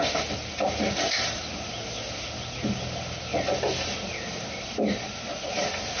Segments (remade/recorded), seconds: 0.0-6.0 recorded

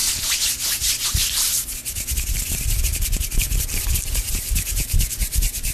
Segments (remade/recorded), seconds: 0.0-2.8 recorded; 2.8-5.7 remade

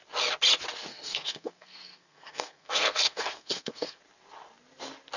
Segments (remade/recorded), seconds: 0.0-0.9 recorded; 0.9-4.0 remade; 4.0-5.2 recorded

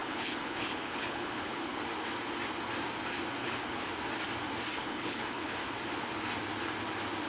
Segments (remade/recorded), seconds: 0.0-1.8 remade; 1.8-3.4 recorded; 3.4-3.9 remade; 3.9-4.8 recorded; 4.8-5.5 remade; 5.5-7.3 recorded

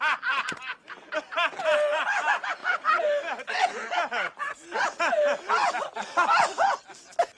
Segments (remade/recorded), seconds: 0.0-7.4 recorded